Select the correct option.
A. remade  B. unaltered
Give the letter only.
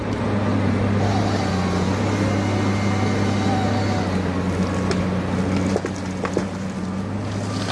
B